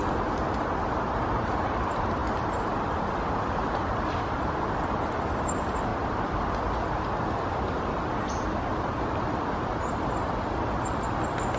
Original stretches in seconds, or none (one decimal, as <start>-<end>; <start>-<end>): 0.0-11.6